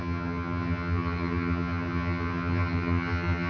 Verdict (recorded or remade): remade